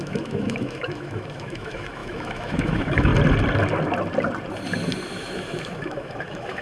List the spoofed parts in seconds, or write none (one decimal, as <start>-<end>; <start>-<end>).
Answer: 0.0-3.1; 5.1-6.6